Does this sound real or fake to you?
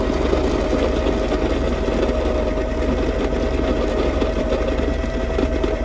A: real